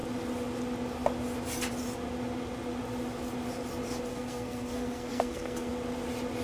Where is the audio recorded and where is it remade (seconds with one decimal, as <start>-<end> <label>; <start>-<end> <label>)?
0.0-4.1 recorded; 4.1-5.7 remade; 5.7-6.4 recorded

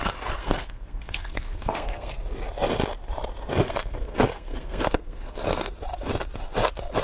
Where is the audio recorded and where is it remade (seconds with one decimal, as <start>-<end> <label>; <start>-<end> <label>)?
0.0-0.4 recorded; 0.4-2.1 remade; 2.1-3.6 recorded; 3.6-5.7 remade; 5.7-7.0 recorded

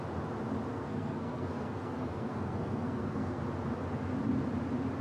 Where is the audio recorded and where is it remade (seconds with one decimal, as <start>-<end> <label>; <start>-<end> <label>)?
0.0-0.7 recorded; 0.7-3.4 remade; 3.4-5.0 recorded

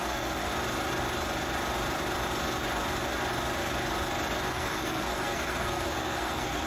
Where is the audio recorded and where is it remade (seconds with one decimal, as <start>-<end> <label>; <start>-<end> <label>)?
0.0-0.5 remade; 0.5-4.5 recorded; 4.5-6.7 remade

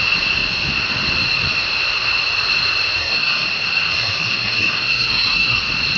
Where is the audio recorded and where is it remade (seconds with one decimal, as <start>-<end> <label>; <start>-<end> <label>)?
0.0-3.0 recorded; 3.0-5.6 remade; 5.6-6.0 recorded